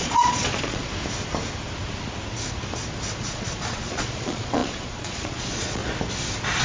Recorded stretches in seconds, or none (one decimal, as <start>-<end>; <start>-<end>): 0.9-3.2; 5.8-6.6